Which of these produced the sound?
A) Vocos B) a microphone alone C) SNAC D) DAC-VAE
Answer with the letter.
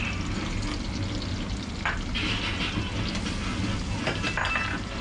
B